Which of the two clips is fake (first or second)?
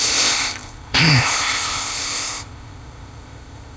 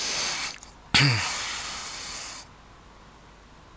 first